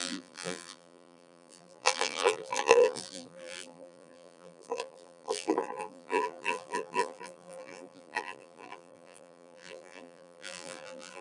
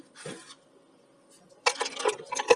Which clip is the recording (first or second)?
second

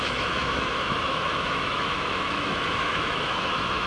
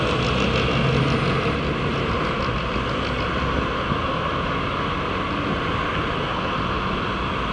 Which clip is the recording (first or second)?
second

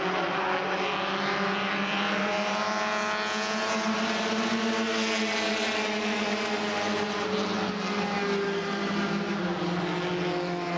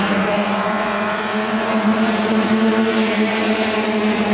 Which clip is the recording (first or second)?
first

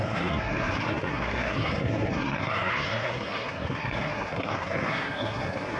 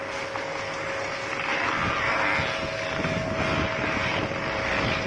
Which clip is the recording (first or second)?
second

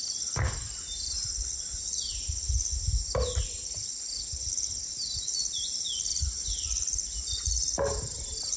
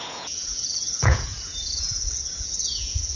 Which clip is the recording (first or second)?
first